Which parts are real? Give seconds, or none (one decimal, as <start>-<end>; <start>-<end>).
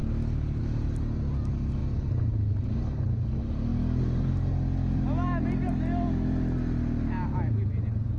0.0-8.2